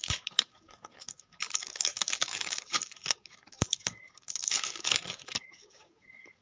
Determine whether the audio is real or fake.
fake